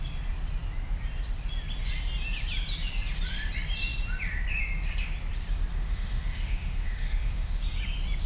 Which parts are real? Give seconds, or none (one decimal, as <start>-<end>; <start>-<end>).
0.0-5.7; 7.6-8.3